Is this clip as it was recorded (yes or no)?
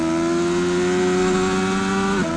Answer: yes